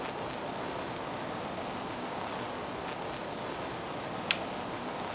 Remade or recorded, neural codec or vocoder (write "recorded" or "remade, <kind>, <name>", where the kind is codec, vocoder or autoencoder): recorded